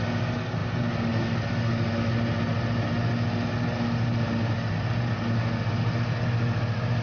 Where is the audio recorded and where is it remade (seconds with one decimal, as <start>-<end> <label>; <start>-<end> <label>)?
0.0-7.0 recorded